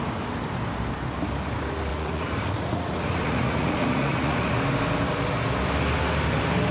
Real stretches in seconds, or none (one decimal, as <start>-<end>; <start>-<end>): 0.0-1.9; 4.6-6.7